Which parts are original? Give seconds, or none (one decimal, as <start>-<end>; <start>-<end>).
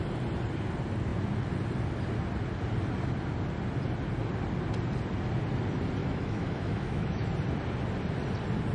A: 0.0-6.0; 7.3-8.7